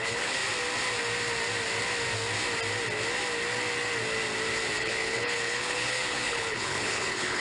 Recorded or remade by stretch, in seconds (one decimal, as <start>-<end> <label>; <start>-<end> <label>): 0.0-0.4 remade; 0.4-4.8 recorded; 4.8-7.4 remade